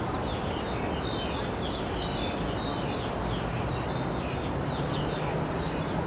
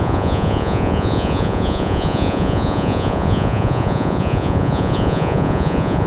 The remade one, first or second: second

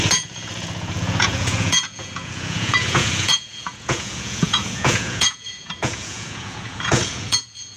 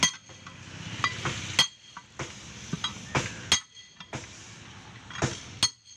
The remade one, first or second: first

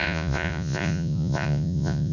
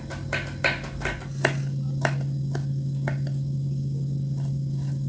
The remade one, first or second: first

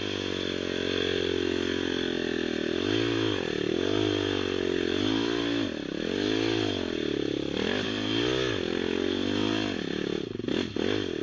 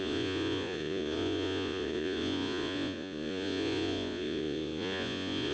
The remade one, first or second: second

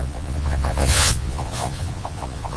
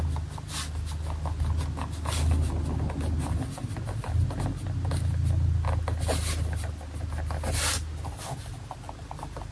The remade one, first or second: first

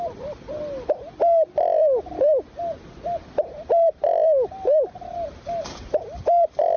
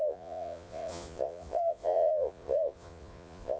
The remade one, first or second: second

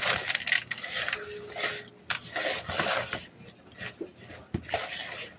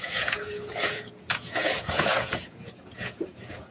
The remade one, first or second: second